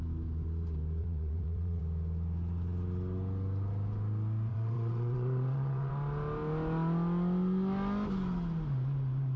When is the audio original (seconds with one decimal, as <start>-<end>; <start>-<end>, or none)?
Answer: 0.0-1.0; 1.8-4.5; 5.9-9.4